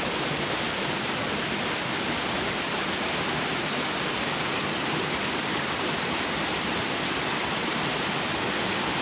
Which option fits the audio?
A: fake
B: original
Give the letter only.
A